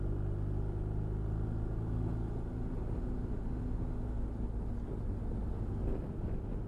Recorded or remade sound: recorded